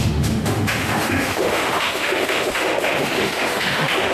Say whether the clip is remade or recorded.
remade